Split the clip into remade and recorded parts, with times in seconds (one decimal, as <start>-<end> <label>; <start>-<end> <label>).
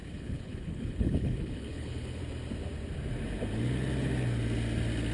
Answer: 0.0-2.2 remade; 2.2-5.1 recorded